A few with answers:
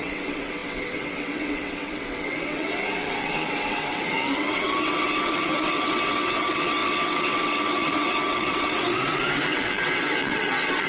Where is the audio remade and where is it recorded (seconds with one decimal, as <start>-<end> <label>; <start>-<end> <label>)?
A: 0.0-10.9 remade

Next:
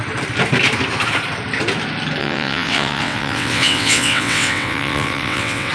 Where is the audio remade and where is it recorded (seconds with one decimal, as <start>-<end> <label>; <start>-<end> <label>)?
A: 0.0-2.2 recorded; 2.2-5.7 remade

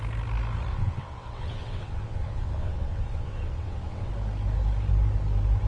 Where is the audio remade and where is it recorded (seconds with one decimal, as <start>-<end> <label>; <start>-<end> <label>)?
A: 0.0-0.7 recorded; 0.7-4.1 remade; 4.1-5.7 recorded

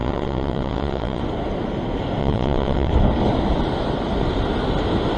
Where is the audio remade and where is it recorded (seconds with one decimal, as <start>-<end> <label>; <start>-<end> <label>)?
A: 0.0-1.2 remade; 1.2-2.2 recorded; 2.2-2.9 remade; 2.9-5.2 recorded

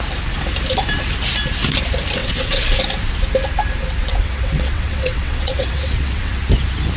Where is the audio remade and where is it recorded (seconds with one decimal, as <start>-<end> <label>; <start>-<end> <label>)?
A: 0.0-2.2 recorded; 2.2-2.8 remade; 2.8-4.1 recorded; 4.1-6.4 remade; 6.4-7.0 recorded

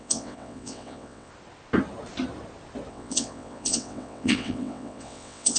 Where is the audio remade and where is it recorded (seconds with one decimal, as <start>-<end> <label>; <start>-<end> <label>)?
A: 0.0-1.3 remade; 1.3-2.9 recorded; 2.9-5.6 remade

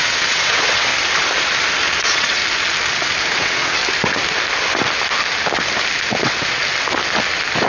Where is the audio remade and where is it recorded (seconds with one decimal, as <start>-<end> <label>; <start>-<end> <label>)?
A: 0.0-0.9 remade; 0.9-2.0 recorded; 2.0-2.4 remade; 2.4-3.3 recorded; 3.3-3.8 remade; 3.8-6.1 recorded; 6.1-6.6 remade; 6.6-7.7 recorded